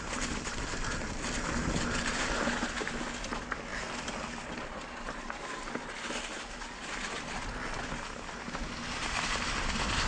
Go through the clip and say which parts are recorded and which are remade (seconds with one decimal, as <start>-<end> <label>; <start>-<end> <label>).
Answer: 0.0-10.1 recorded